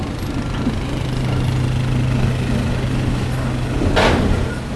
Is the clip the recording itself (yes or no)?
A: yes